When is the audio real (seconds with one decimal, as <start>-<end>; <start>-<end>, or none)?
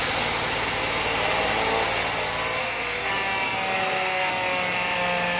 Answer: 0.0-2.6; 3.1-3.8; 4.3-5.4